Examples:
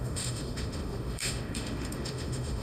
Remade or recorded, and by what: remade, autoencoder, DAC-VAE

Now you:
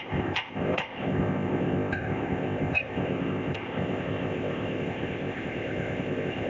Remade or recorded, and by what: remade, codec, ZipCodec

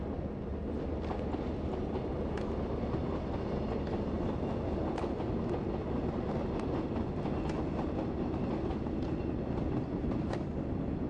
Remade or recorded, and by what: recorded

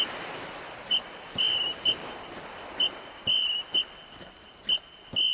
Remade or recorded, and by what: recorded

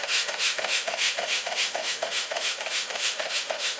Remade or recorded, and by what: remade, autoencoder, DAC-VAE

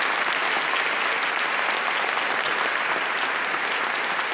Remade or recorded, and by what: recorded